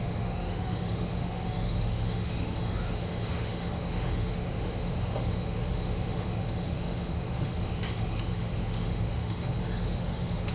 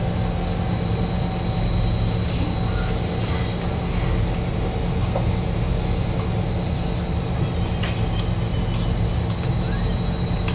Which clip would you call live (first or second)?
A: second